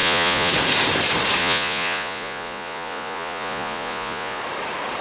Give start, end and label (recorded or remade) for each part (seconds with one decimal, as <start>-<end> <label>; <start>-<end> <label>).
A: 0.0-0.5 remade; 0.5-1.4 recorded; 1.4-4.4 remade; 4.4-5.0 recorded